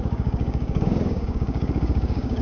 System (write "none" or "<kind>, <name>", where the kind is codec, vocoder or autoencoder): codec, DAC